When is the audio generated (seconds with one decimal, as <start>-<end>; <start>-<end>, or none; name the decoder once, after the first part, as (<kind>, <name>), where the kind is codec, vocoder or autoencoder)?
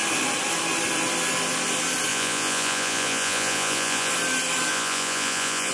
2.1-4.1 (vocoder, Vocos); 4.7-5.7